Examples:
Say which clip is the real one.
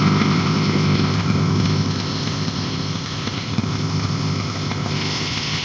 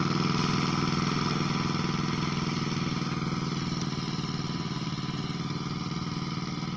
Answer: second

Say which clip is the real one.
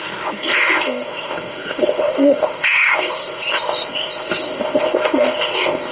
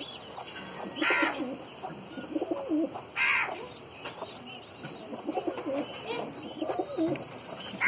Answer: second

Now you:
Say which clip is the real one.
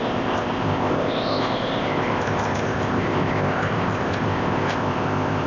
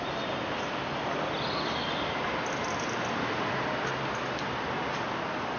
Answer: second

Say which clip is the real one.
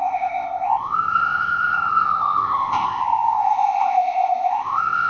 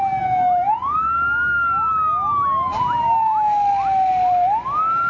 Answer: second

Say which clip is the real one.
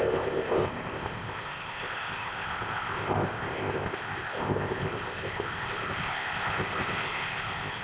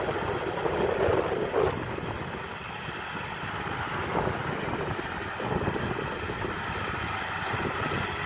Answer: second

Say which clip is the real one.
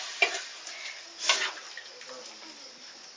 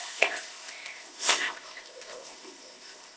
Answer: first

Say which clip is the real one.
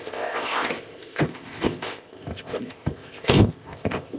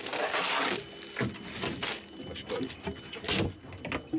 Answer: second